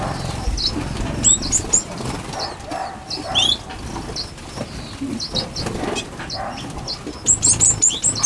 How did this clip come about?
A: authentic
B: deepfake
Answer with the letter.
A